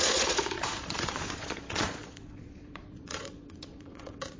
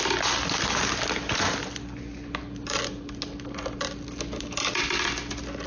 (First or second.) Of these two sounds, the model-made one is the first